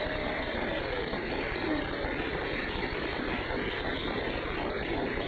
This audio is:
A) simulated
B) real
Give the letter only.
B